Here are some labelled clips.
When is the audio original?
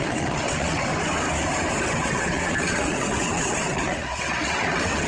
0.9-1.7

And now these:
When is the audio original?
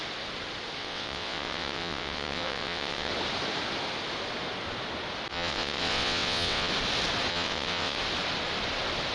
0.0-0.8; 3.1-5.3; 6.7-7.3; 8.0-9.1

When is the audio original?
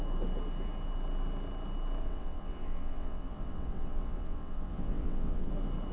0.0-2.0; 5.5-5.9